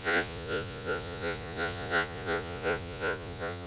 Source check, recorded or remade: remade